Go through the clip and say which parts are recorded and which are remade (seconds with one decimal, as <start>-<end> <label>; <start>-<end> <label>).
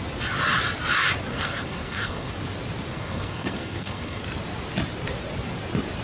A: 0.0-1.3 recorded; 1.3-2.3 remade; 2.3-2.9 recorded; 2.9-4.2 remade; 4.2-6.0 recorded